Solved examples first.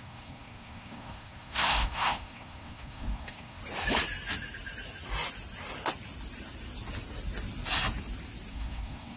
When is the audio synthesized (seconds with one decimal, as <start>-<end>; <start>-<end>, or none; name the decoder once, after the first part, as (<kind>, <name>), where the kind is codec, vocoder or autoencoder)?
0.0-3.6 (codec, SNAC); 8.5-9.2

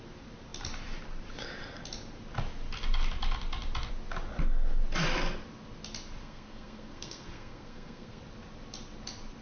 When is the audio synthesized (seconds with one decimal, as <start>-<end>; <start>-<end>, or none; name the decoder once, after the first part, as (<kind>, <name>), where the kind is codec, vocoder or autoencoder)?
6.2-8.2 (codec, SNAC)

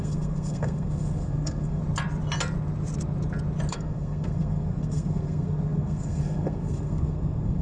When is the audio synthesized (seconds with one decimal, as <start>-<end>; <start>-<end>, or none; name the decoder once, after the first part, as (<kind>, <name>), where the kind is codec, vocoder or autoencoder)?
0.0-1.8 (codec, SNAC); 3.7-7.6